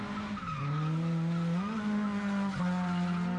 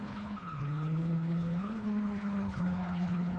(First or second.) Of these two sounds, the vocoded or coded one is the second